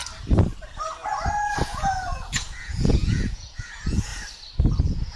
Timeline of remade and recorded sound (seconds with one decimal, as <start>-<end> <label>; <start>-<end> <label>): 0.0-1.6 recorded; 1.6-4.1 remade; 4.1-4.8 recorded; 4.8-5.2 remade